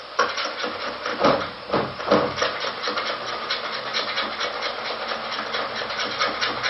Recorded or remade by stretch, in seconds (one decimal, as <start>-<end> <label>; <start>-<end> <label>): 0.0-1.1 recorded; 1.1-2.0 remade; 2.0-6.7 recorded